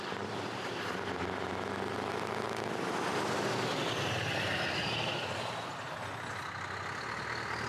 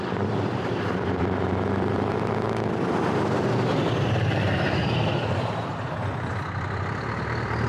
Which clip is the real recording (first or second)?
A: first